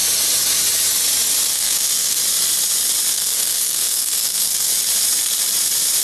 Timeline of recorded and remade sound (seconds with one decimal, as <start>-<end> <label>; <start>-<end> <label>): 0.0-1.5 recorded; 1.5-2.2 remade; 2.2-3.1 recorded; 3.1-4.7 remade; 4.7-6.0 recorded